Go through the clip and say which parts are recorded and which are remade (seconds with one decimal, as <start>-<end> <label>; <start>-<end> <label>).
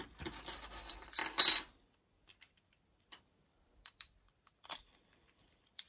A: 0.0-1.2 remade; 1.2-3.7 recorded; 3.7-5.9 remade